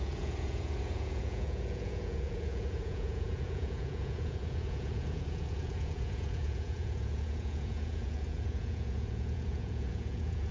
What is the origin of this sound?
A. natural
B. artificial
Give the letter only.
B